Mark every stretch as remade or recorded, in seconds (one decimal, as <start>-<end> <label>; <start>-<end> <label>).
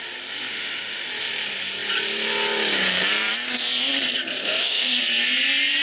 0.0-0.5 recorded; 0.5-1.1 remade; 1.1-4.4 recorded; 4.4-5.0 remade; 5.0-5.8 recorded